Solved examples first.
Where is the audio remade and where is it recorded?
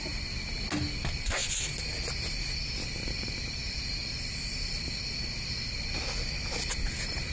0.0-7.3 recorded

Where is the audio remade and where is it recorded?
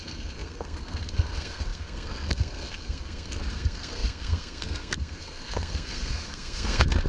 0.0-7.1 remade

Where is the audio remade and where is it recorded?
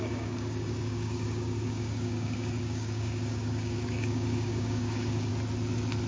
0.0-5.3 remade; 5.3-6.1 recorded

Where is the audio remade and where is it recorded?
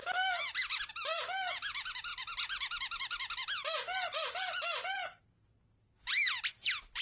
0.0-7.0 recorded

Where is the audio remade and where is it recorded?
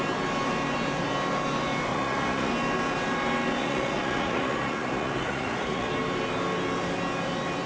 0.0-1.9 recorded; 1.9-2.5 remade; 2.5-3.6 recorded; 3.6-5.9 remade; 5.9-7.7 recorded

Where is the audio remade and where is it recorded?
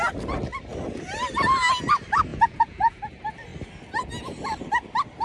0.0-2.3 recorded; 2.3-3.0 remade; 3.0-5.2 recorded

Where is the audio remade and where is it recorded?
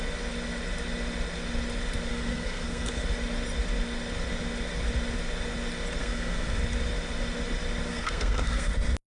0.0-2.1 recorded; 2.1-2.9 remade; 2.9-6.0 recorded; 6.0-6.6 remade; 6.6-7.9 recorded; 7.9-8.7 remade; 8.7-9.1 recorded